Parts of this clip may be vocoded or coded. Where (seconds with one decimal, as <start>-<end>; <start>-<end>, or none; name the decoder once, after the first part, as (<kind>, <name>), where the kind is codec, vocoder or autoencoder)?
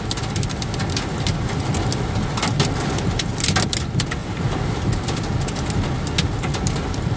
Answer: none